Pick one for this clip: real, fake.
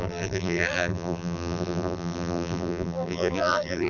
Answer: fake